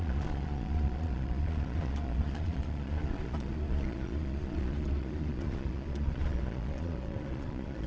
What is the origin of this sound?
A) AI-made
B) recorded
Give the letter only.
A